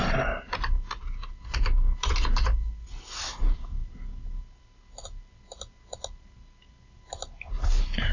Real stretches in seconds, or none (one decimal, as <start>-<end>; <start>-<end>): 0.0-8.1